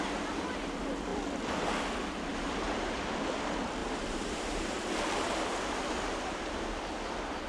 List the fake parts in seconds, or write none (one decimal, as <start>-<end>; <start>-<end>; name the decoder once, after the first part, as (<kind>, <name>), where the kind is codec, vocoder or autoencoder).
2.3-3.0 (vocoder, BigVGAN v2); 3.8-4.7